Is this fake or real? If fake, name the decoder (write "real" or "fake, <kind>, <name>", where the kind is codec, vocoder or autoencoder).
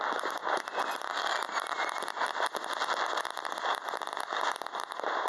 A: real